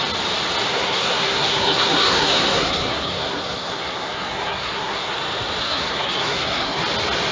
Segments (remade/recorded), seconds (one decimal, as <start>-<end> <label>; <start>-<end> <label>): 0.0-0.7 recorded; 0.7-5.1 remade; 5.1-5.6 recorded; 5.6-6.8 remade; 6.8-7.3 recorded